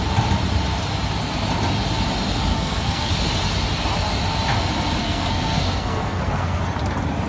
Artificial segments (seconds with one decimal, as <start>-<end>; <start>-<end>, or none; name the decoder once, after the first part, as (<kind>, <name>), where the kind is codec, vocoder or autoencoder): 2.5-3.1 (codec, SNAC); 5.0-6.6